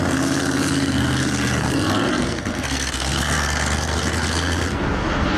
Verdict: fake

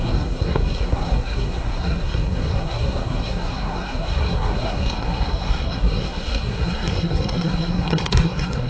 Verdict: fake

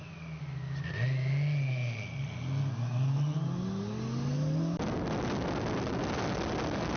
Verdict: real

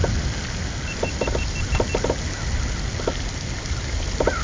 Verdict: real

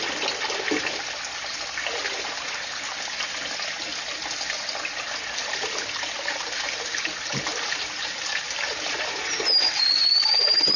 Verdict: real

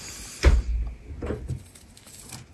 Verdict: real